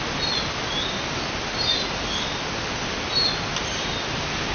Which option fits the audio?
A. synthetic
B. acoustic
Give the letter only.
B